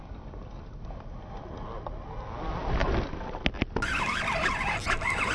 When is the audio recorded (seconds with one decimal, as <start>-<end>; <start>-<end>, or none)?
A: 0.0-5.3